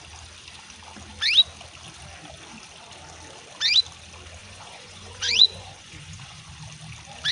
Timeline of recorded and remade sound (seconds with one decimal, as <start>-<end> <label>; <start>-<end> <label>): 0.0-4.4 recorded; 4.4-6.5 remade; 6.5-7.3 recorded